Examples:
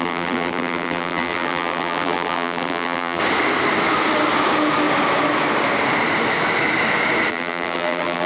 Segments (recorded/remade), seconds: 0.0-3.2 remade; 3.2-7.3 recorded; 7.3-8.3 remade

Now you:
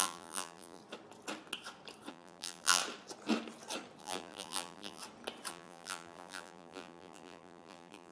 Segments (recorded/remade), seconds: 0.0-0.8 remade; 0.8-2.1 recorded; 2.1-2.8 remade; 2.8-4.0 recorded; 4.0-5.0 remade; 5.0-5.5 recorded; 5.5-8.1 remade